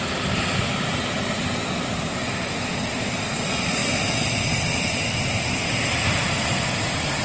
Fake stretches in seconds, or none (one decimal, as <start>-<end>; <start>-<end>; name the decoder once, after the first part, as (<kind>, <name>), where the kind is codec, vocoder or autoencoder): none